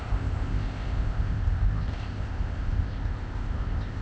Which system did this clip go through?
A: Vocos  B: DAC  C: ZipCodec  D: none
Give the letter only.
C